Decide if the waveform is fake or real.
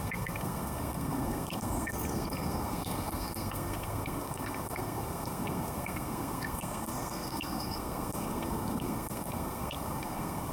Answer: fake